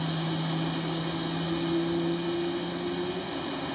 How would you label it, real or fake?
real